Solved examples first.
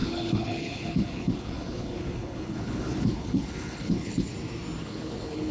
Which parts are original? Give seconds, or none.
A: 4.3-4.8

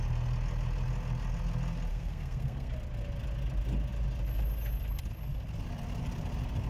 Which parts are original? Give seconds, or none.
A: 0.0-1.9; 2.7-6.7

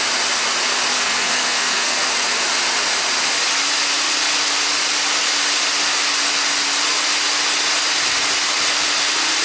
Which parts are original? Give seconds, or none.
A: 0.0-0.9; 2.1-9.4